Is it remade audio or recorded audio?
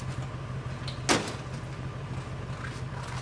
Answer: recorded